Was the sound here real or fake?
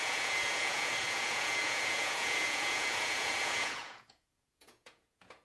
fake